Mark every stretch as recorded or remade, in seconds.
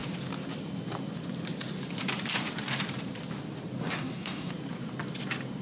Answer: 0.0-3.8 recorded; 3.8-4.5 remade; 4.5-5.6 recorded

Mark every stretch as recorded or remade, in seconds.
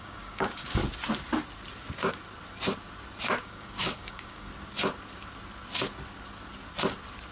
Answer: 0.0-0.8 remade; 0.8-3.4 recorded; 3.4-4.5 remade; 4.5-7.3 recorded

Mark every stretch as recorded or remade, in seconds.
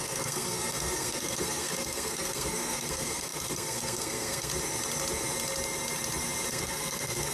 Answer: 0.0-4.5 remade; 4.5-6.5 recorded; 6.5-7.3 remade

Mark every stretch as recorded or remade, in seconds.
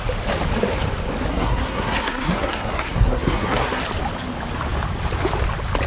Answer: 0.0-1.3 recorded; 1.3-3.8 remade; 3.8-5.9 recorded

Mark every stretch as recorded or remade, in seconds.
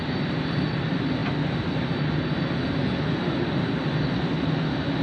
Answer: 0.0-5.0 recorded